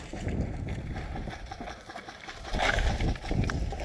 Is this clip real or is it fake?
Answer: real